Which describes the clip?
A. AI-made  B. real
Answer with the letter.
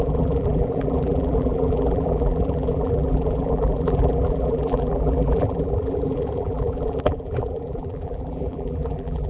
A